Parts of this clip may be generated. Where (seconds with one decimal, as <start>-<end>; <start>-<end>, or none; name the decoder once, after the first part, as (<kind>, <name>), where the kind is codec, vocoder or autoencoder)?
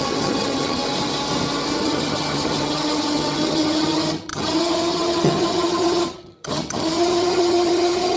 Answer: 0.0-0.8 (vocoder, HiFi-GAN); 1.8-8.2